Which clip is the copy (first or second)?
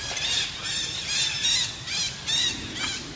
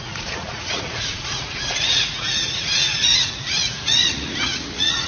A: second